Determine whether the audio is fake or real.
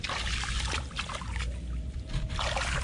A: real